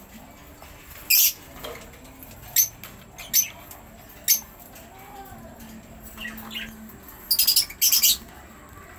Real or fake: real